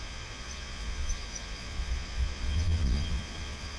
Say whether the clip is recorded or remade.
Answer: remade